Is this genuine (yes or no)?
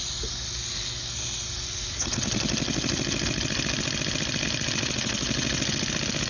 yes